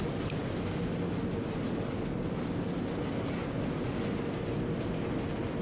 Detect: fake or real real